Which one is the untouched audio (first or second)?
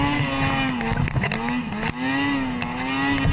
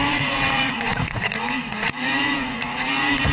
first